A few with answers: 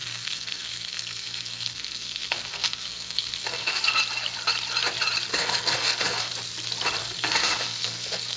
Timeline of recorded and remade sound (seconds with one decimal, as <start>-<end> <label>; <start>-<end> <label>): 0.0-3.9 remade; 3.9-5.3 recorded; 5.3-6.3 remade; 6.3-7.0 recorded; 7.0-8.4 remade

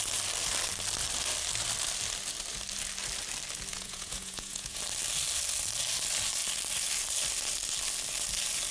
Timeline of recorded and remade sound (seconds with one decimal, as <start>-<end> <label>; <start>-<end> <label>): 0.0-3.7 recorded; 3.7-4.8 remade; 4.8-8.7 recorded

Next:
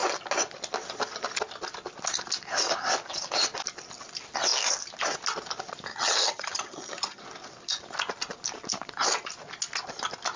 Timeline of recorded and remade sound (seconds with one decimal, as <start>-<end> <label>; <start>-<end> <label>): 0.0-5.9 recorded; 5.9-7.2 remade; 7.2-10.4 recorded